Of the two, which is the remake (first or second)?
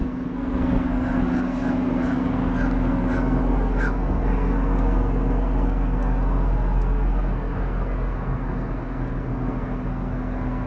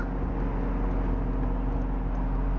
first